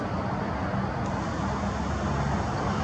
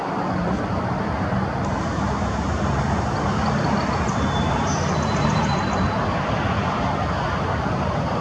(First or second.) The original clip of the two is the first